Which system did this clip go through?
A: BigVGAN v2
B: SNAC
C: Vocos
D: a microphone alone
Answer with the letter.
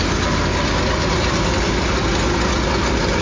D